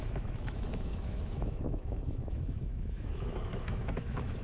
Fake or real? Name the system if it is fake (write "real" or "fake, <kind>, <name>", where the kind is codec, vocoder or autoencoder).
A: fake, autoencoder, DAC-VAE